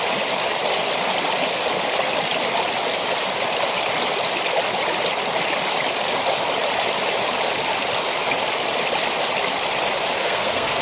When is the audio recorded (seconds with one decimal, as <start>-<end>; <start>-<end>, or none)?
0.0-10.2